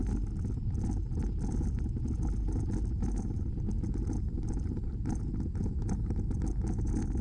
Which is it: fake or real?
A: real